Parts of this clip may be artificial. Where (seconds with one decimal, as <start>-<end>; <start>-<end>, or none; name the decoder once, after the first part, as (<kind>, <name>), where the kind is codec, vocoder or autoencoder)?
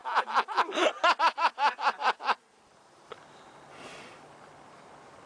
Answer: 0.0-0.8 (autoencoder, DAC-VAE)